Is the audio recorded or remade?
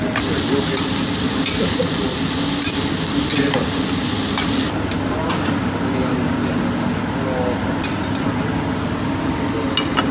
recorded